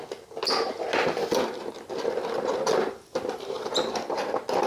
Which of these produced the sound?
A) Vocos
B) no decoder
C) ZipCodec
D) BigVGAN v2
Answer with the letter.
B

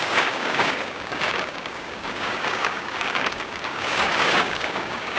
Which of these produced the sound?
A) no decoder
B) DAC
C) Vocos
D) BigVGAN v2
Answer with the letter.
B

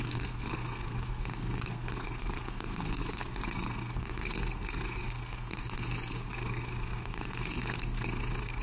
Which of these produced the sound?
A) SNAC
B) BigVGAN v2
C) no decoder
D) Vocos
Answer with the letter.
A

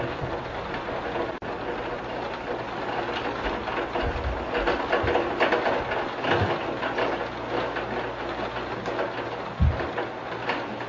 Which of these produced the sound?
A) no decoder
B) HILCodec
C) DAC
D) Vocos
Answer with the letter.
A